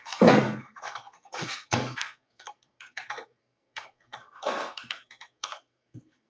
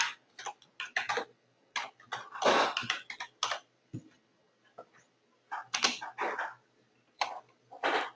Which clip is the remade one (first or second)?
first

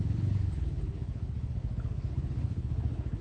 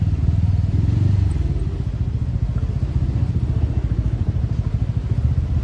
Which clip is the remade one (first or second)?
first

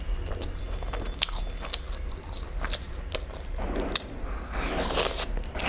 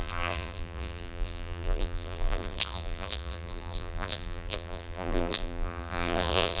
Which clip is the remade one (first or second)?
second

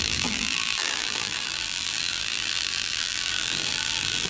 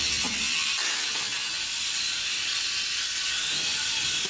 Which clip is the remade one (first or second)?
first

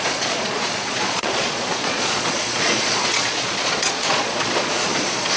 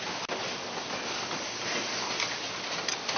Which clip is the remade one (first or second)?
first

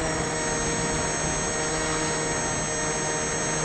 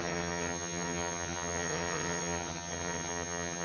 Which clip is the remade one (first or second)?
second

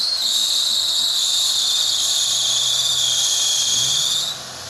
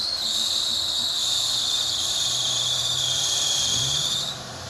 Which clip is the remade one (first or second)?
second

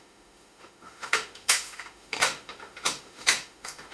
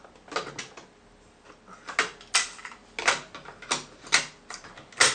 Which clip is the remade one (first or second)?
first